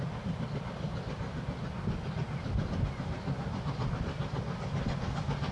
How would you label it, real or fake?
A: real